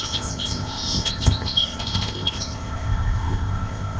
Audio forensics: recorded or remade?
remade